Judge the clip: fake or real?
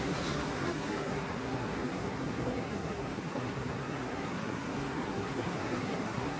fake